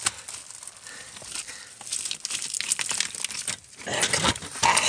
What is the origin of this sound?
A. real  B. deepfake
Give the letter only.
A